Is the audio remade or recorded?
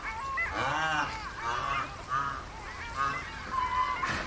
recorded